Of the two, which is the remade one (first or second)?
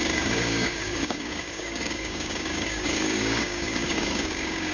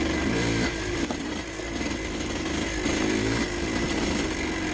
first